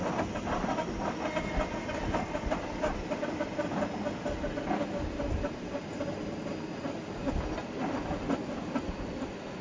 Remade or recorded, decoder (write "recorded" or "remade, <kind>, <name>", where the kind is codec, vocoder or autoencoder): recorded